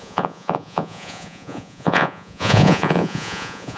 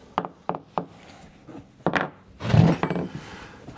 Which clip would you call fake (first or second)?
first